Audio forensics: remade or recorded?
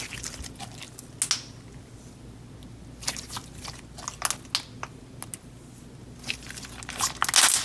recorded